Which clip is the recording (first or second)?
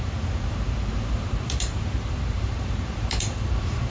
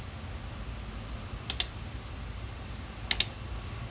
second